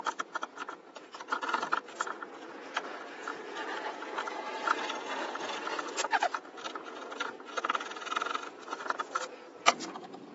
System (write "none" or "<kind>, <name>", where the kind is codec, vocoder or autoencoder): vocoder, Vocos